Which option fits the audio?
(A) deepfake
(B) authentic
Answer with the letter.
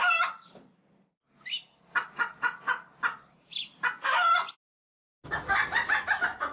B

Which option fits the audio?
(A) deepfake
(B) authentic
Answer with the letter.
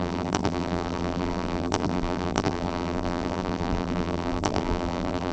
A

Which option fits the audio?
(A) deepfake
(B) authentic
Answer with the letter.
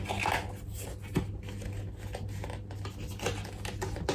B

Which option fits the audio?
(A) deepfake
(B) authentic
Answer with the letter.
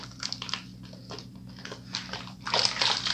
B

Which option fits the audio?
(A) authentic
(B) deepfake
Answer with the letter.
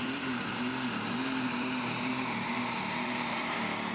B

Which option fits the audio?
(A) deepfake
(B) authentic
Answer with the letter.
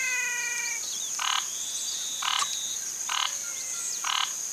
B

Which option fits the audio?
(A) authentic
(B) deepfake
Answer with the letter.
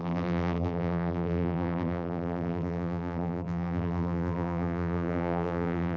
B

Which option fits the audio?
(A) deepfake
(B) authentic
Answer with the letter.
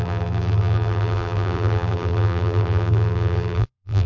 A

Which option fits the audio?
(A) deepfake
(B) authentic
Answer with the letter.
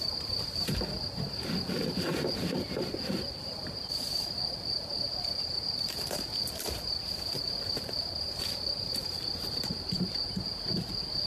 A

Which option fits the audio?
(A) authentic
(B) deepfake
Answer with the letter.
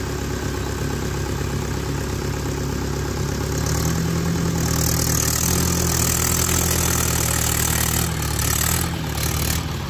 A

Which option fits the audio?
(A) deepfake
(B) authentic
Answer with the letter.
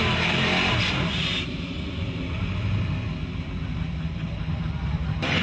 B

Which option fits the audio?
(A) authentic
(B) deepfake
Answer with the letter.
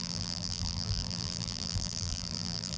B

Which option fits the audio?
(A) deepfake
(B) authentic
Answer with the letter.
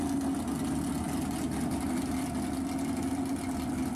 B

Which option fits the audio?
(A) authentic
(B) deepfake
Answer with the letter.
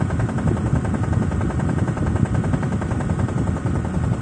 A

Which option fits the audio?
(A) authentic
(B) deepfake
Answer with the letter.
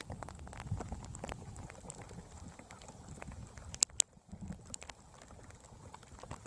A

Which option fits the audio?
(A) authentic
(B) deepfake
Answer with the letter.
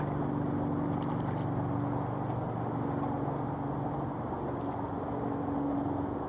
A